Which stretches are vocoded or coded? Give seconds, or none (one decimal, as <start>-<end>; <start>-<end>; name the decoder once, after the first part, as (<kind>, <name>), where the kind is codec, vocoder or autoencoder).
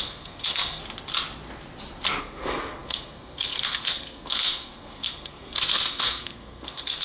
0.0-0.8 (codec, SNAC); 2.2-7.0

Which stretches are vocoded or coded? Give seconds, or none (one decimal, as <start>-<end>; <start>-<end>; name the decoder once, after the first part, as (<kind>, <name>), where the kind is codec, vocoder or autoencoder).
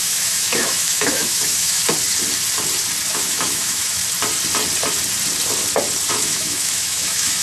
0.0-1.8 (autoencoder, DAC-VAE); 3.1-4.0; 6.1-7.4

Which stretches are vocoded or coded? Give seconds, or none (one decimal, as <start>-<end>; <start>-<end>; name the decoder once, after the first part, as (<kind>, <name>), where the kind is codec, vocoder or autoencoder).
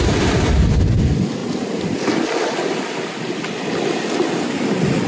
none